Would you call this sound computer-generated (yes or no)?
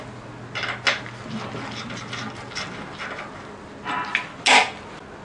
no